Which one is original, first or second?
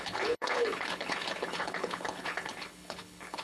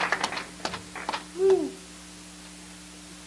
second